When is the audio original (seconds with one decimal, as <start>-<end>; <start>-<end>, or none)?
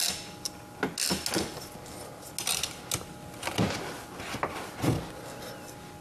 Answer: 0.0-6.0